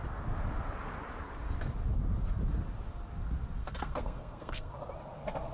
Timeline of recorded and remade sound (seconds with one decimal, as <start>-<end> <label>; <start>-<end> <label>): 0.0-3.6 recorded; 3.6-4.7 remade; 4.7-5.5 recorded